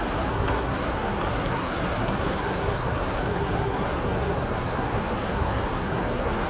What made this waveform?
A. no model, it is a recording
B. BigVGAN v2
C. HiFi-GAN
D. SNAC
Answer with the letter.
D